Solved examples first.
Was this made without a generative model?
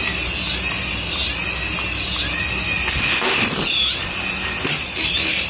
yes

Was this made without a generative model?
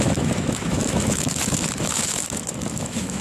no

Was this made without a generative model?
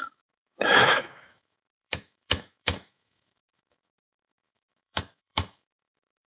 no